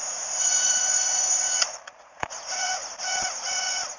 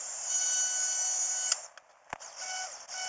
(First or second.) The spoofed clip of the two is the first